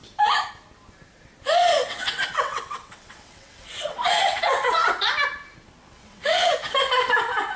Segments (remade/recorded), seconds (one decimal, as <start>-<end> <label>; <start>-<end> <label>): 0.0-1.8 recorded; 1.8-5.1 remade; 5.1-5.8 recorded; 5.8-6.5 remade; 6.5-7.6 recorded